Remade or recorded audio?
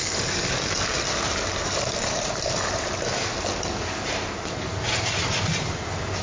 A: recorded